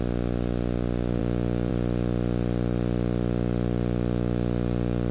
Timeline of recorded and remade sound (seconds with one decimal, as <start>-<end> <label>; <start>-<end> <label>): 0.0-5.1 recorded